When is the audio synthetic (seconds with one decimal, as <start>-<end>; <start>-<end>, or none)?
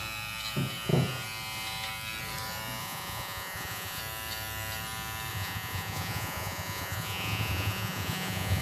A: 2.8-4.0; 5.3-8.6